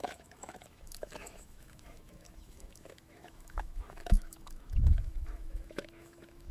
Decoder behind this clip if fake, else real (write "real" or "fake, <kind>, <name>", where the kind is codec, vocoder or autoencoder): fake, autoencoder, DAC-VAE